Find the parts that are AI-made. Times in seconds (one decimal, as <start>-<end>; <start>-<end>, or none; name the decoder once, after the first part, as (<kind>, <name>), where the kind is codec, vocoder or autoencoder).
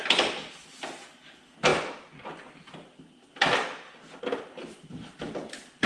none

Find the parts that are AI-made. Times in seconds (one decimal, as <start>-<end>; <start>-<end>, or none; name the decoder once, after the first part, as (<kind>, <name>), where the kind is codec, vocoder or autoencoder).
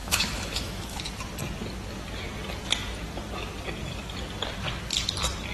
0.0-1.0 (autoencoder, DAC-VAE)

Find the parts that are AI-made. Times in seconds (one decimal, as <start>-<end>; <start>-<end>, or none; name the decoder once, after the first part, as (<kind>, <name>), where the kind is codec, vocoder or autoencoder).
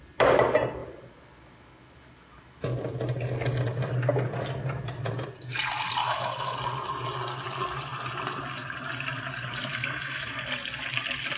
6.0-6.6 (autoencoder, DAC-VAE); 9.7-10.3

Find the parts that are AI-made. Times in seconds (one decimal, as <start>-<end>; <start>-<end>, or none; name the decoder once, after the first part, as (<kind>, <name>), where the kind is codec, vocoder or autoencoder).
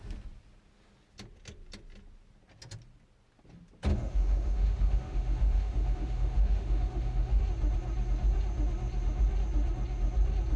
3.9-7.4 (autoencoder, DAC-VAE)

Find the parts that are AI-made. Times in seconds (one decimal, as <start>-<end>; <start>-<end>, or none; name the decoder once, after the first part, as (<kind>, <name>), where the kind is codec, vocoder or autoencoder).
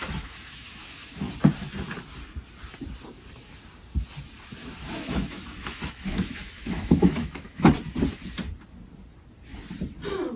0.0-1.3 (autoencoder, DAC-VAE); 4.6-7.7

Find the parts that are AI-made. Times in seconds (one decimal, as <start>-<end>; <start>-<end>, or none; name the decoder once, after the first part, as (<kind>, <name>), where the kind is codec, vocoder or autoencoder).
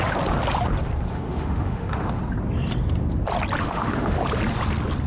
1.1-2.2 (autoencoder, DAC-VAE); 3.6-4.2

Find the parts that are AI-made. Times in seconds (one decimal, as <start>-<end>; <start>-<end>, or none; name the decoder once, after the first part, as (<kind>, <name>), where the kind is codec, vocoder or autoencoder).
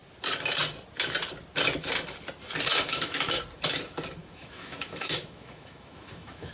2.7-3.4 (autoencoder, DAC-VAE); 4.2-6.5